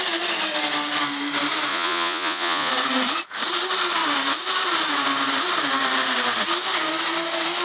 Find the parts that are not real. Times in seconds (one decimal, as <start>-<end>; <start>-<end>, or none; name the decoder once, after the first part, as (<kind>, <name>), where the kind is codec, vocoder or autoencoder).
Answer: 1.7-2.7 (vocoder, Vocos)